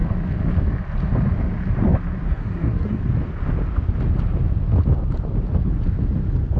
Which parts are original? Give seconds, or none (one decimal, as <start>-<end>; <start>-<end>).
0.0-2.3; 3.0-6.6